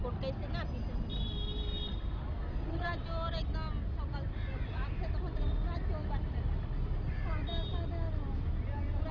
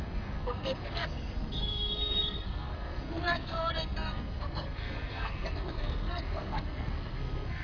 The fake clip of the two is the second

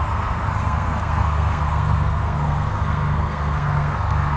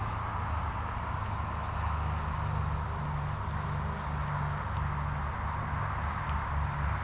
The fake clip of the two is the first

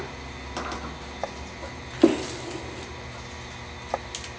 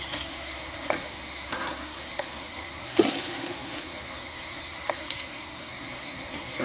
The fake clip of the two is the second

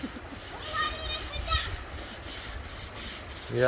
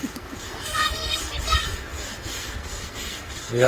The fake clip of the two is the second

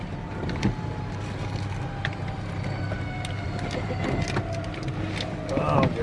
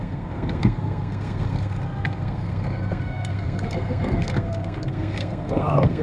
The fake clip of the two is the second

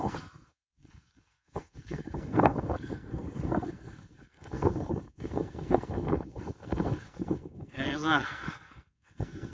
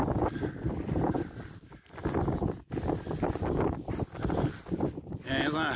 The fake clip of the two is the first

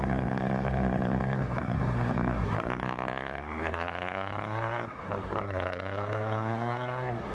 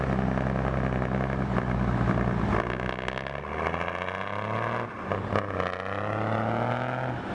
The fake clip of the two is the first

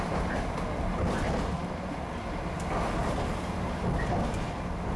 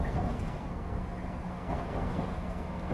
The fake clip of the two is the second